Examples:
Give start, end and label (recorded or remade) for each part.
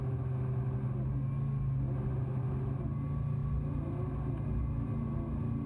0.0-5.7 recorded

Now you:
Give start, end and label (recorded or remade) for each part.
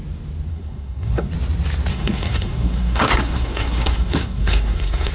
0.0-0.5 recorded; 0.5-1.3 remade; 1.3-1.9 recorded; 1.9-5.1 remade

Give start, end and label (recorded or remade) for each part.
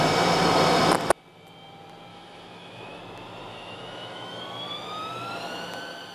0.0-2.1 recorded; 2.1-3.0 remade; 3.0-3.5 recorded; 3.5-4.4 remade; 4.4-6.1 recorded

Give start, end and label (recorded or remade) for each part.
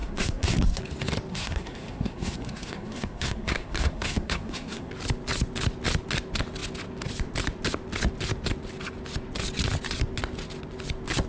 0.0-0.8 remade; 0.8-1.3 recorded; 1.3-4.9 remade; 4.9-11.3 recorded